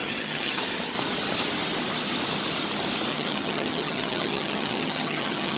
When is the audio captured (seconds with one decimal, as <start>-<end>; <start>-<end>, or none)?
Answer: 0.6-3.1